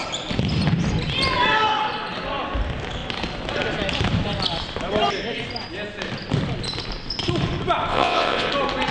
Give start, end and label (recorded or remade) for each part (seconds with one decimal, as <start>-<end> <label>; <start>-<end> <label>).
0.0-7.9 recorded; 7.9-8.5 remade; 8.5-8.9 recorded